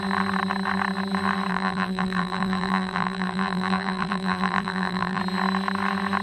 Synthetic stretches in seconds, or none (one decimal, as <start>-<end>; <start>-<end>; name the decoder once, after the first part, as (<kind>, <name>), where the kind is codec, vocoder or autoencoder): 1.5-5.2 (vocoder, BigVGAN v2)